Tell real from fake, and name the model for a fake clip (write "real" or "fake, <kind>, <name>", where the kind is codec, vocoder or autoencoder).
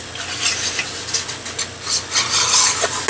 real